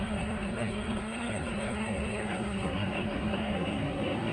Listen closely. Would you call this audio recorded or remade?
remade